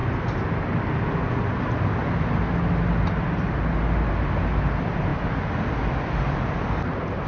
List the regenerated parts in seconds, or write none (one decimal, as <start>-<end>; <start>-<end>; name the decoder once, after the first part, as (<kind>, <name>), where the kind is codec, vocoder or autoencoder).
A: none